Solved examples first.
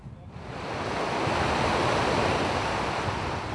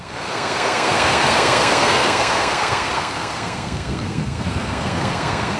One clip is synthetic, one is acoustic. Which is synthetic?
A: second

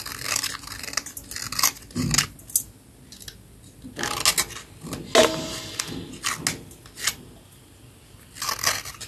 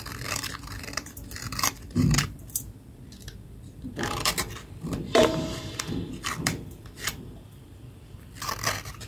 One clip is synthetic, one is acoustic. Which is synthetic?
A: second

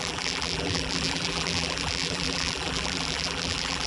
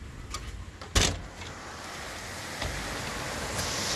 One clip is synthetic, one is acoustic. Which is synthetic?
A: first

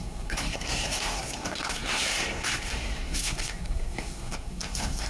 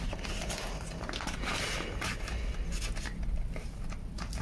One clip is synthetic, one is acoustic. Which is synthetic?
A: first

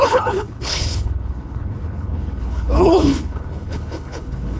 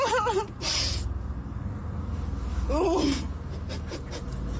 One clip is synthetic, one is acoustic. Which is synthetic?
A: first